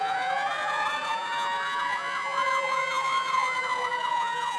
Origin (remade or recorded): remade